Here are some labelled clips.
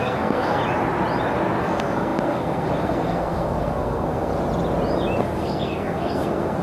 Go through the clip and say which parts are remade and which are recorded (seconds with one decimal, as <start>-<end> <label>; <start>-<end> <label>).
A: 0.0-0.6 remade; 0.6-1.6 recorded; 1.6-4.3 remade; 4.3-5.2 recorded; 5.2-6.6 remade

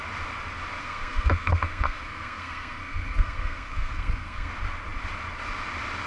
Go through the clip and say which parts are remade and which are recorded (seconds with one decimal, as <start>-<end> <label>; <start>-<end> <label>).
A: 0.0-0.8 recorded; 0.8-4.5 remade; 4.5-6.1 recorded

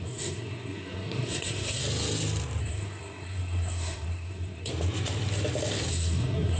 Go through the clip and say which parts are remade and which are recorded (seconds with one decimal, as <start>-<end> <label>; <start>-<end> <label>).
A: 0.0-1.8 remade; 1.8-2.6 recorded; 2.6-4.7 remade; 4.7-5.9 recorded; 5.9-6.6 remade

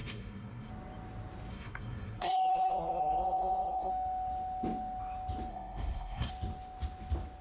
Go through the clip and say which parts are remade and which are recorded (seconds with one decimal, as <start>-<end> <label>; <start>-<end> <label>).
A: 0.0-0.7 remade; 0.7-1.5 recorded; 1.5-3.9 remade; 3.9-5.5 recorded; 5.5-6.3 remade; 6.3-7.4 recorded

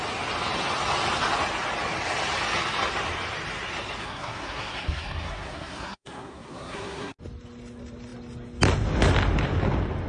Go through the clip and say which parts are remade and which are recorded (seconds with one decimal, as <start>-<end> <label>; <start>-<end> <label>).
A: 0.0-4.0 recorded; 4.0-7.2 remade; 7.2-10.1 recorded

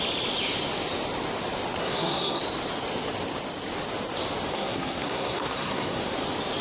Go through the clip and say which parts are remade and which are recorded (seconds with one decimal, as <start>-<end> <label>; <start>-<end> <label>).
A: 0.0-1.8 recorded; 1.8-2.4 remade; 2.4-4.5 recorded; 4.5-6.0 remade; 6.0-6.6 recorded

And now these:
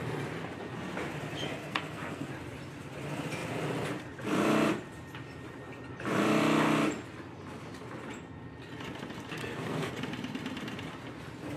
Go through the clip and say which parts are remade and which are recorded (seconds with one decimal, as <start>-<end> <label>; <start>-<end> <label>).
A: 0.0-1.6 recorded; 1.6-2.3 remade; 2.3-9.4 recorded; 9.4-9.9 remade; 9.9-11.6 recorded

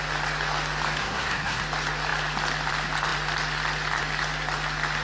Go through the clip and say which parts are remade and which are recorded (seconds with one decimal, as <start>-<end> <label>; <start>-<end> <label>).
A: 0.0-1.0 recorded; 1.0-1.6 remade; 1.6-5.0 recorded